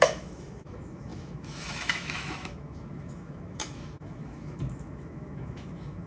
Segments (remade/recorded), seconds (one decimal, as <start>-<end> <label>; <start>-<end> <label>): 0.0-6.1 remade